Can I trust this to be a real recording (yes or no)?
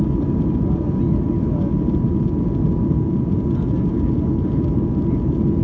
yes